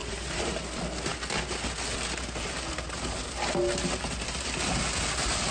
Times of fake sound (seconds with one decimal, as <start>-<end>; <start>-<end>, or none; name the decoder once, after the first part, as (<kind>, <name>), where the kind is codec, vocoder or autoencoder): 0.0-0.6 (vocoder, BigVGAN v2)